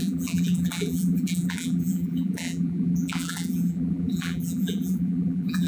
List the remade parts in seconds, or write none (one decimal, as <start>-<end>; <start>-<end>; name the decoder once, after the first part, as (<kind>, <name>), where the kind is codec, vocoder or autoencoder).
0.0-5.7 (vocoder, BigVGAN v2)